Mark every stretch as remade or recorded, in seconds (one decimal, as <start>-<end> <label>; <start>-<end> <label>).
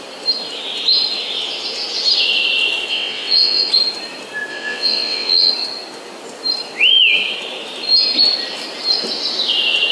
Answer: 0.0-2.9 recorded; 2.9-3.7 remade; 3.7-4.5 recorded; 4.5-5.5 remade; 5.5-9.9 recorded